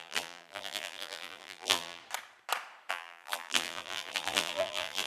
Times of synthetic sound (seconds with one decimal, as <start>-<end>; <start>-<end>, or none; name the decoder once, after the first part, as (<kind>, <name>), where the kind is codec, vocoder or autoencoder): 0.0-2.0 (vocoder, BigVGAN v2); 2.9-5.1

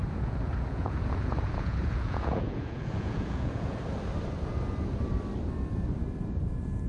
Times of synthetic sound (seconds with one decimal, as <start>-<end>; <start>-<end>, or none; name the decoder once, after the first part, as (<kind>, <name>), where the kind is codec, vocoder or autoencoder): 0.0-3.8 (vocoder, Vocos)